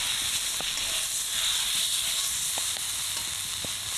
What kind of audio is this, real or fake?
real